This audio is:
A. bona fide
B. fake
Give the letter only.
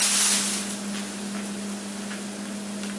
A